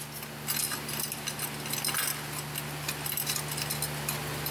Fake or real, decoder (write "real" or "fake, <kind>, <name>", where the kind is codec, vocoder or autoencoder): real